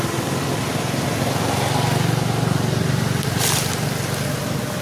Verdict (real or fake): real